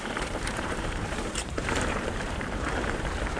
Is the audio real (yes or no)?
no